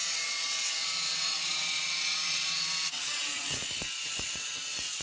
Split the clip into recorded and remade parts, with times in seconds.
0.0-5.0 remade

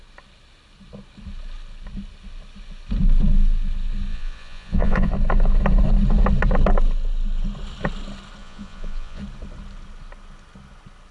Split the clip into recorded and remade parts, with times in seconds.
0.0-4.1 recorded; 4.1-5.1 remade; 5.1-8.4 recorded; 8.4-9.2 remade; 9.2-11.1 recorded

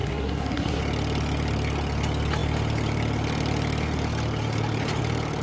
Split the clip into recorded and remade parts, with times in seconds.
0.0-0.8 remade; 0.8-5.4 recorded

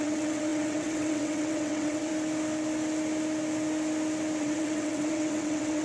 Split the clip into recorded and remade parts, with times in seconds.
0.0-2.1 remade; 2.1-4.4 recorded; 4.4-5.8 remade